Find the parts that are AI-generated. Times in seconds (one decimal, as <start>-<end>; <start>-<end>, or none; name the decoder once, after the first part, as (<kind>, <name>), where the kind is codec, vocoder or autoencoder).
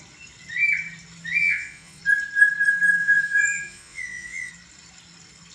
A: 1.4-2.0 (vocoder, Vocos); 3.0-4.5